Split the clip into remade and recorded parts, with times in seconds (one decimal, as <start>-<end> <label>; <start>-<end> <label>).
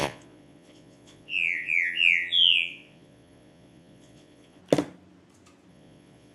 0.0-4.6 remade; 4.6-5.7 recorded; 5.7-6.3 remade